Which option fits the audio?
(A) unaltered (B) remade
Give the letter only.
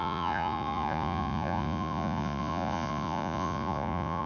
B